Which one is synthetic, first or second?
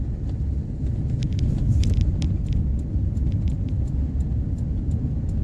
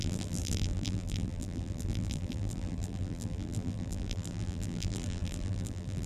second